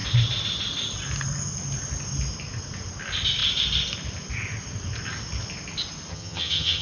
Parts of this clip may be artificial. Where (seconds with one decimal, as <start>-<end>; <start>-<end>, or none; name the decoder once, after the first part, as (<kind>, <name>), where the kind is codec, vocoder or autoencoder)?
6.1-6.8 (vocoder, HiFi-GAN)